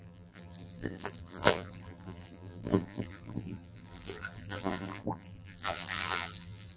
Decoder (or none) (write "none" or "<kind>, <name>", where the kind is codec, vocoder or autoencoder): vocoder, BigVGAN v2